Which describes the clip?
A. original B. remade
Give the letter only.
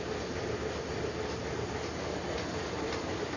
A